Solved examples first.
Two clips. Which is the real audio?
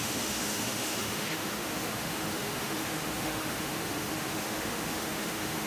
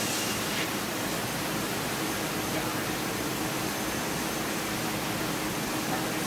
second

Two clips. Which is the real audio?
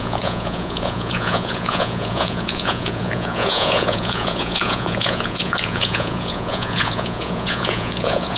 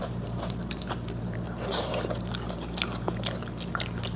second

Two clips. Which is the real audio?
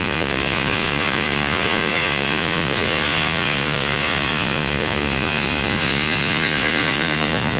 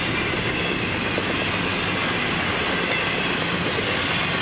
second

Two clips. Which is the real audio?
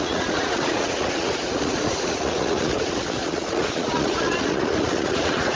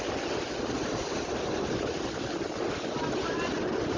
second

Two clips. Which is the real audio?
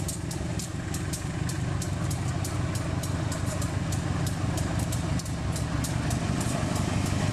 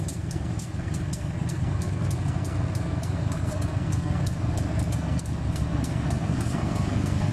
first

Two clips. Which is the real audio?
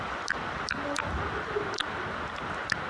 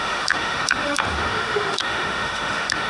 first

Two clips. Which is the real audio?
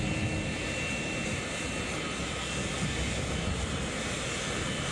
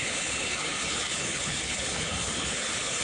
first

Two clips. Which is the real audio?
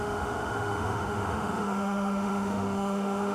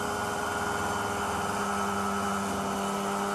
second